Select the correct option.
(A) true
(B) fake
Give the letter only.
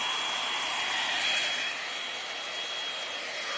A